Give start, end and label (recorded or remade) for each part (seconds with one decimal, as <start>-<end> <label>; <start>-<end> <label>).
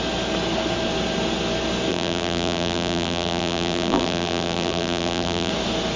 0.0-1.9 recorded; 1.9-5.5 remade; 5.5-6.0 recorded